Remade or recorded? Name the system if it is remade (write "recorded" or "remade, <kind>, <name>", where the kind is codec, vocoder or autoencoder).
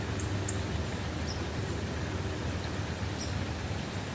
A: recorded